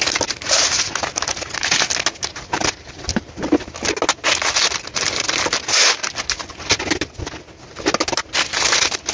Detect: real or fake real